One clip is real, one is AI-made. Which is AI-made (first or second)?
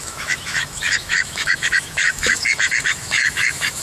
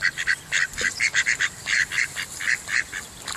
first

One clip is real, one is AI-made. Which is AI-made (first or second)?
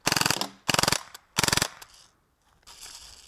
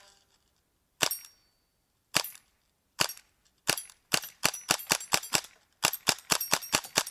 second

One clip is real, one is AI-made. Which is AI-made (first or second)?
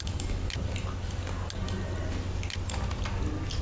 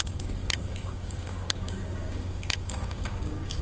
second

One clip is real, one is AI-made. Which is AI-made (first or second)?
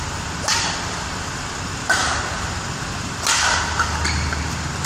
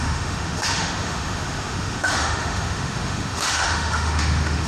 second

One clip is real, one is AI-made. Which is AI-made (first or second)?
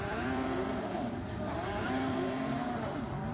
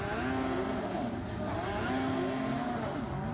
first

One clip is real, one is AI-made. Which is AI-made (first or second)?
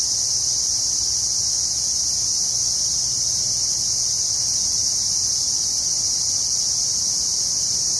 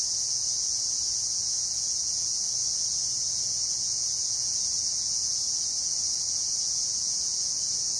second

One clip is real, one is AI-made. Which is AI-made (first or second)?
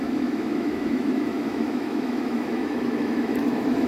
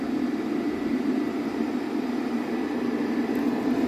first